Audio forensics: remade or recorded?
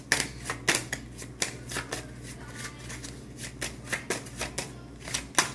recorded